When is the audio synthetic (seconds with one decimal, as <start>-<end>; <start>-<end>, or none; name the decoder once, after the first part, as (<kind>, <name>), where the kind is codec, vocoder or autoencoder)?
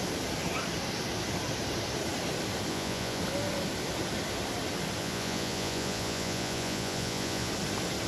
2.7-3.2 (vocoder, Vocos); 5.0-7.5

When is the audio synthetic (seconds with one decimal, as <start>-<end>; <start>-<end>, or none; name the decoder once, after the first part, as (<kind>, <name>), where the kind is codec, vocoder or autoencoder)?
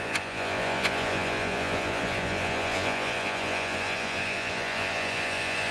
0.0-5.7 (vocoder, Vocos)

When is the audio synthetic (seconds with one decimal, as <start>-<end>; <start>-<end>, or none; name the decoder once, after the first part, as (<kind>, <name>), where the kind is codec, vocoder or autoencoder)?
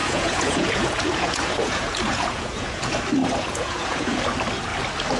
0.0-2.8 (vocoder, Vocos); 3.2-4.2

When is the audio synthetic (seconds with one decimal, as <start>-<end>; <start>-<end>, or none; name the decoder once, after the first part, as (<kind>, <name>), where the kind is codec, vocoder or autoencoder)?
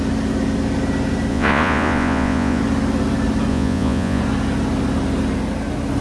1.3-2.6 (vocoder, Vocos); 3.5-4.2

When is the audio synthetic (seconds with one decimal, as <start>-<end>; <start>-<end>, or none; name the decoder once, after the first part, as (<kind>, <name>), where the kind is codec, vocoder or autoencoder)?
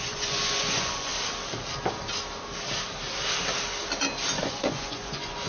0.0-1.1 (vocoder, Vocos); 4.4-5.5